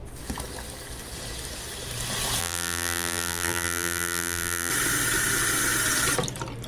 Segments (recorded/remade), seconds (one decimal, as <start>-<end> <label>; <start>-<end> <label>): 0.0-2.4 recorded; 2.4-4.7 remade; 4.7-6.7 recorded